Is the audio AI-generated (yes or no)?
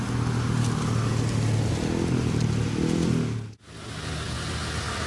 no